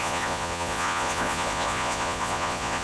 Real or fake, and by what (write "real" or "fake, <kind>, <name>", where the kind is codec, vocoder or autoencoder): fake, vocoder, Vocos